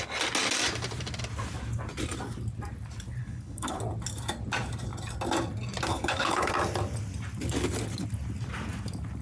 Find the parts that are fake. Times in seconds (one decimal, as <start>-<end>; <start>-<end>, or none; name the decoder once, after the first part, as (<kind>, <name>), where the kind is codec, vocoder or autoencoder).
3.2-3.8 (codec, HILCodec); 5.9-6.5